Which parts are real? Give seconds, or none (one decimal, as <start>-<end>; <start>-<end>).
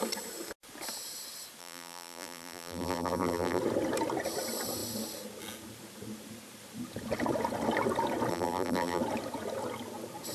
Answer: 0.0-1.6; 3.6-8.3; 9.0-10.3